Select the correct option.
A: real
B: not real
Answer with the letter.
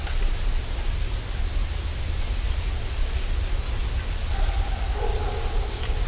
A